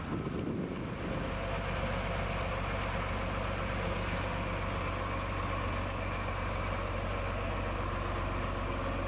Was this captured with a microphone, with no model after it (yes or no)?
yes